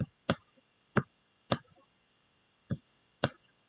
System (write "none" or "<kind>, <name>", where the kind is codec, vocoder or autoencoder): codec, DAC